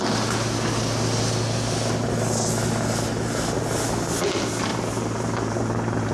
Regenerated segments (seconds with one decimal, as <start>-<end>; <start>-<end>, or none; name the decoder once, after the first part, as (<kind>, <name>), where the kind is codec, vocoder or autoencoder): 4.7-6.1 (vocoder, BigVGAN v2)